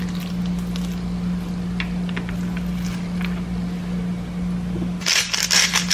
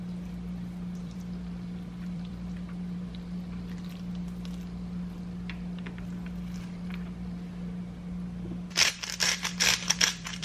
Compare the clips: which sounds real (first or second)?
first